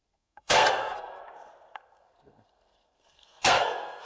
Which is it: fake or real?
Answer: fake